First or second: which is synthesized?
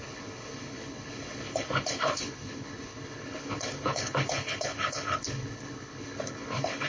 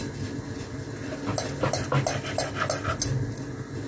first